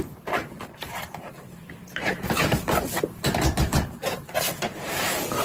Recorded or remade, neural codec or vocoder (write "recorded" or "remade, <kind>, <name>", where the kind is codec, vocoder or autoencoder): remade, vocoder, BigVGAN v2